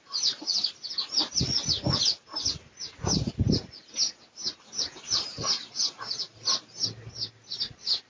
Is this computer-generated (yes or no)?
no